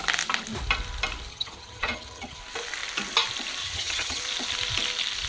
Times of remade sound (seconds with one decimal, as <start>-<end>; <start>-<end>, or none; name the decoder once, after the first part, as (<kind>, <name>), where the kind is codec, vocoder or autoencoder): 1.3-2.4 (vocoder, HiFi-GAN); 3.6-4.2